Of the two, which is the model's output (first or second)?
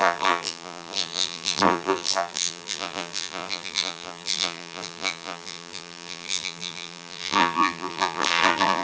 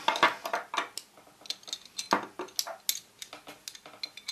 first